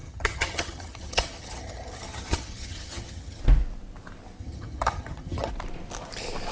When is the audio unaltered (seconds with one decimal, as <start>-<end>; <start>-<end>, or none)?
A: 3.4-4.4; 5.5-6.5